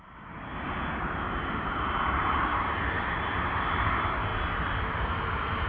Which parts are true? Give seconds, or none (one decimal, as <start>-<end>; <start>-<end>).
0.5-1.3; 4.3-5.0